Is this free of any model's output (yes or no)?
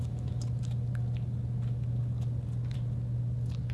yes